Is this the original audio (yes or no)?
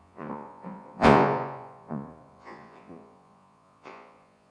no